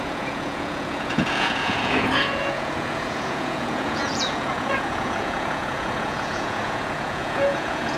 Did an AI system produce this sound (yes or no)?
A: yes